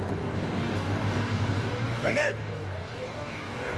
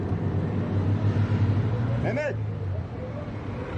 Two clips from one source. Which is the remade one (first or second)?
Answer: first